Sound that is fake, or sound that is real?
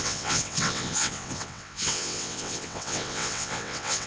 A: fake